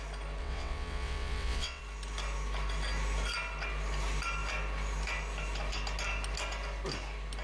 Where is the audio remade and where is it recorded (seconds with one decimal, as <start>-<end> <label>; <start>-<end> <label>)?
0.0-0.4 recorded; 0.4-1.8 remade; 1.8-7.4 recorded